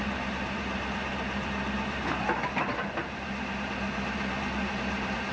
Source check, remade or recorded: remade